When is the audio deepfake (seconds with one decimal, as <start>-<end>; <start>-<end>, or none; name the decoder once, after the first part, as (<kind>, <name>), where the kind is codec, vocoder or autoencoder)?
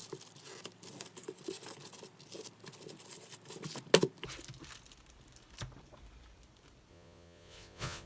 6.9-8.1 (vocoder, Vocos)